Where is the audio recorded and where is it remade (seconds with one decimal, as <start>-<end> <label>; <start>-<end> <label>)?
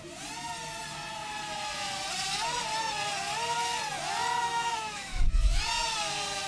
0.0-4.4 recorded; 4.4-5.6 remade; 5.6-6.5 recorded